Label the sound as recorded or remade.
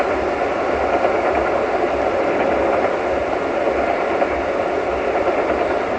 recorded